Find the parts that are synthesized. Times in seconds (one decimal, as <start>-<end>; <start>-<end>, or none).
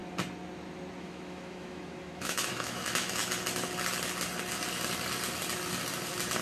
1.0-3.2